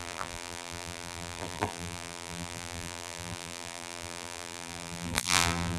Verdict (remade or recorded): remade